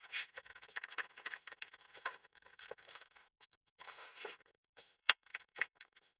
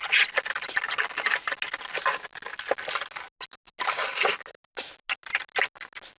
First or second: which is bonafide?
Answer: second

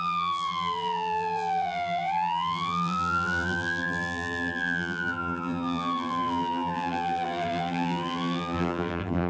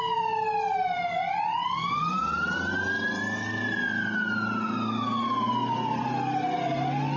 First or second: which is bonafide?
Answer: second